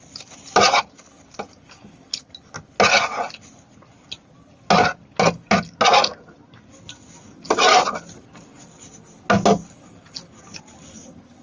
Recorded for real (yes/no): yes